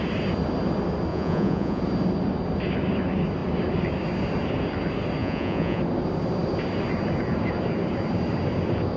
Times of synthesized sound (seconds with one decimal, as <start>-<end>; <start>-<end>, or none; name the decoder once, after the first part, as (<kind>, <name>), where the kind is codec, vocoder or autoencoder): 1.1-1.8 (vocoder, Vocos); 5.2-5.8